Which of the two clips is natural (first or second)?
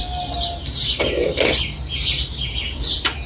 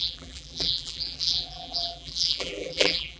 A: first